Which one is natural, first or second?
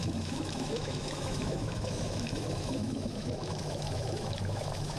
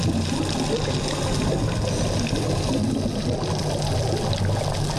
second